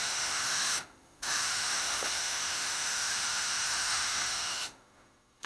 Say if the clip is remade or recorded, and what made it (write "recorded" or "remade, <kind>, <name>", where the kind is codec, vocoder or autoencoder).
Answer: remade, autoencoder, DAC-VAE